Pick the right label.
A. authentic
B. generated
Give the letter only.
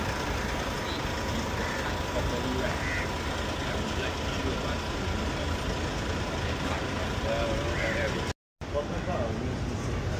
A